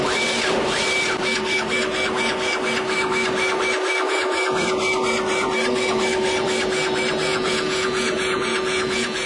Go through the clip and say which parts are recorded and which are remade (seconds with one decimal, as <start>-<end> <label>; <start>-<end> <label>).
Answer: 0.0-7.3 recorded; 7.3-9.3 remade

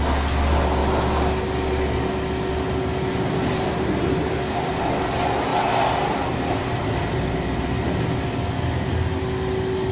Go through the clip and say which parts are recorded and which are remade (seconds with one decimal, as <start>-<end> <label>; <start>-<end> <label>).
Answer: 0.0-9.9 recorded

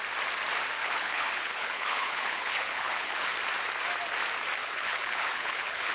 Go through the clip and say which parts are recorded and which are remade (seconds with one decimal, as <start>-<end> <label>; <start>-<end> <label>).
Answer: 0.0-0.8 recorded; 0.8-3.3 remade; 3.3-4.6 recorded; 4.6-5.9 remade

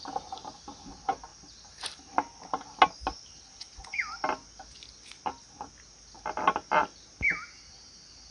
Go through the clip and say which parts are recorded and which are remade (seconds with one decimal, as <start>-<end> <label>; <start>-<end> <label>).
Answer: 0.0-8.3 recorded

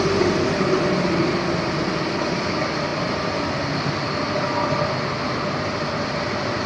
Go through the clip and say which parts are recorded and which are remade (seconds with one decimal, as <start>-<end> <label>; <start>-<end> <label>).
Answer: 0.0-6.7 recorded